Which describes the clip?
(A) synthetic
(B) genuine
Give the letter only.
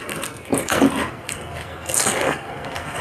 A